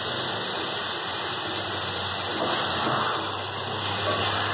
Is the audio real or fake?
real